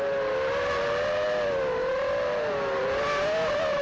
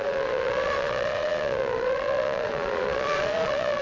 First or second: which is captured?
first